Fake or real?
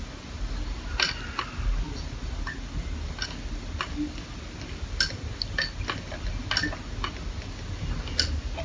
real